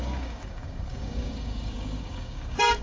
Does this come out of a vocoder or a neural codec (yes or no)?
yes